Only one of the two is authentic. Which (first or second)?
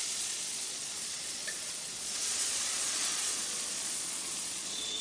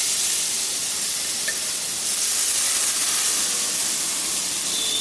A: second